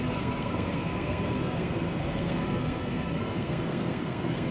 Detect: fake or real fake